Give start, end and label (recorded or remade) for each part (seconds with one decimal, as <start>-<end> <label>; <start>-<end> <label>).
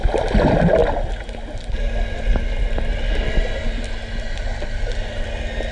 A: 0.0-5.7 recorded